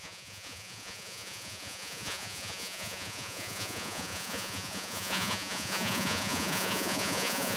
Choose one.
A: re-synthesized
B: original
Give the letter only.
A